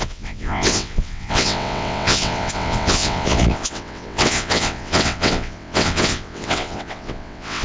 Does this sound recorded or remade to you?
remade